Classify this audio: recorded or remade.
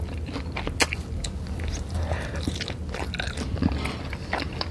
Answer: recorded